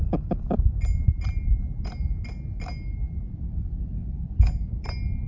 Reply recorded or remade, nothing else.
recorded